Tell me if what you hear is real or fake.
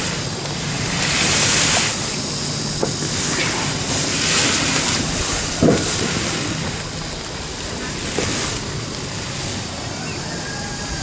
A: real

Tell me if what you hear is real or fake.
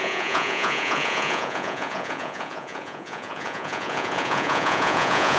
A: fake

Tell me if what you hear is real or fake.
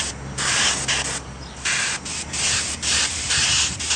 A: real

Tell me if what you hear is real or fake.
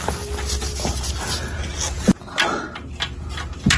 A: real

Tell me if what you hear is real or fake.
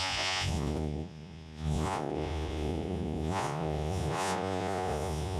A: fake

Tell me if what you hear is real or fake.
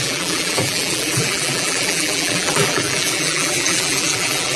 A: fake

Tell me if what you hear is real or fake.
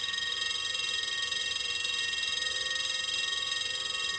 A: real